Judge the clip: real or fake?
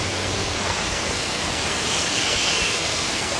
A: fake